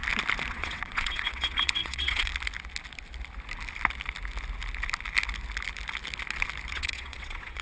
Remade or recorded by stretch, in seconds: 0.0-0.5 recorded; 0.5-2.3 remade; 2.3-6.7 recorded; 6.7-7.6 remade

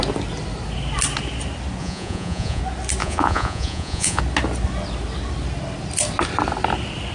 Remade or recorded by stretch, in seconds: 0.0-1.8 recorded; 1.8-2.6 remade; 2.6-3.0 recorded; 3.0-4.2 remade; 4.2-7.1 recorded

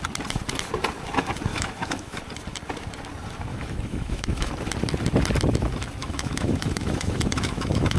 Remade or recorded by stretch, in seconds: 0.0-1.5 recorded; 1.5-2.2 remade; 2.2-3.5 recorded; 3.5-4.5 remade; 4.5-6.0 recorded; 6.0-8.0 remade

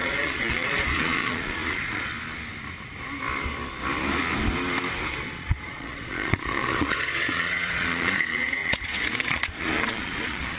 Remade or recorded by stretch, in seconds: 0.0-2.1 remade; 2.1-5.3 recorded; 5.3-10.6 remade

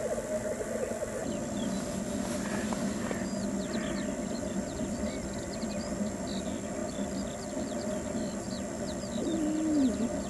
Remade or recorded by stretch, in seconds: 0.0-10.3 recorded